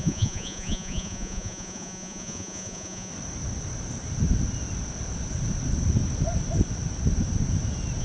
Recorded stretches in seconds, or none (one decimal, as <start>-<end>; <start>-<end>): 3.1-8.0